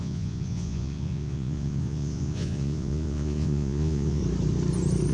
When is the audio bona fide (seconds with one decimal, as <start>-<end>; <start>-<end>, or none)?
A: 4.2-5.1